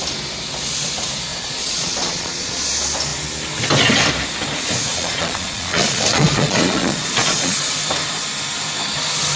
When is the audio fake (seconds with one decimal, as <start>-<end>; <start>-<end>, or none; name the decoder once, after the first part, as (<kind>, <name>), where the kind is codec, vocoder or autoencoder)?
1.3-2.7 (vocoder, Vocos); 4.9-7.6

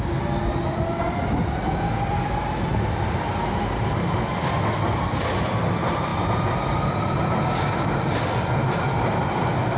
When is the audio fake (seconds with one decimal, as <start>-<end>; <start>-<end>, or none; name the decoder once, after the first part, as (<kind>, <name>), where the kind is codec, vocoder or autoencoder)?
none

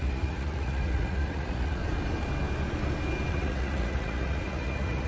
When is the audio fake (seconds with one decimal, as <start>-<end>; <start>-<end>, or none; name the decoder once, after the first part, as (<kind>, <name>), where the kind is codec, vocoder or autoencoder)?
0.0-1.8 (vocoder, Vocos); 3.3-5.1